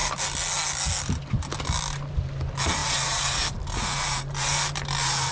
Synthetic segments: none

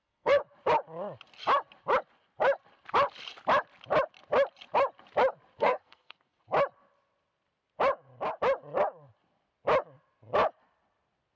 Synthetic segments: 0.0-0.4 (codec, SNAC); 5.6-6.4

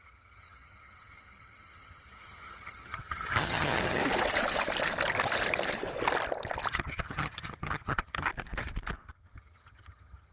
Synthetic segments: 0.0-4.0 (vocoder, HiFi-GAN); 6.7-8.3; 9.1-10.3

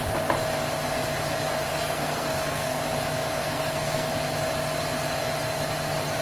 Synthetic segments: 1.7-2.8 (codec, SNAC); 3.4-4.1

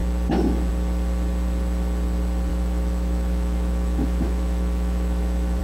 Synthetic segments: 2.5-5.6 (autoencoder, DAC-VAE)

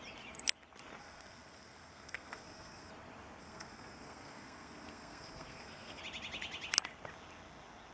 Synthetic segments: 1.0-2.9 (codec, SNAC); 3.4-6.0

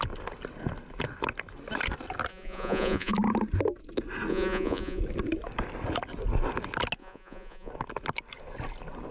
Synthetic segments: 2.3-3.1 (vocoder, Vocos); 4.3-5.0; 7.0-7.7